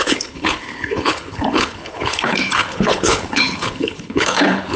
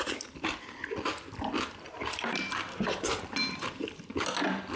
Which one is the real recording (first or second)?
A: second